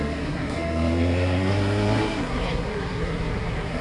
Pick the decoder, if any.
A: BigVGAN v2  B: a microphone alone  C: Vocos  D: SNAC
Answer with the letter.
D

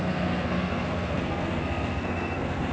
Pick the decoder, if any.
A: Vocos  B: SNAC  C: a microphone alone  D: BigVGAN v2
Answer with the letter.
B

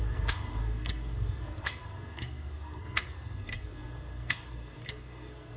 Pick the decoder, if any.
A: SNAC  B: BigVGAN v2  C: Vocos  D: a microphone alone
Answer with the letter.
A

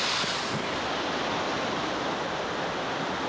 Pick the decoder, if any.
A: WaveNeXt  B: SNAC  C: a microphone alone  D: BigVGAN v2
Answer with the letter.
C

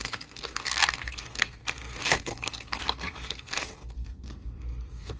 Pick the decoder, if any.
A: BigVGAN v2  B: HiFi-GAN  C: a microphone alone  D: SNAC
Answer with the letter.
D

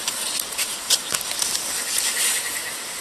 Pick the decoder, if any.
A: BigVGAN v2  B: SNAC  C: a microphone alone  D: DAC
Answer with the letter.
C